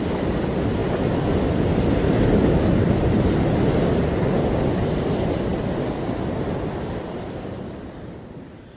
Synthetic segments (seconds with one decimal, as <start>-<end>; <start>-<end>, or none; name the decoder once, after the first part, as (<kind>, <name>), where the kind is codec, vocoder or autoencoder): none